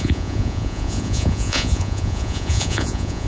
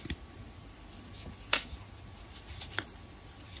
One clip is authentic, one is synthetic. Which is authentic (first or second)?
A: second